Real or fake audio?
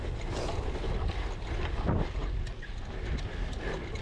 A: real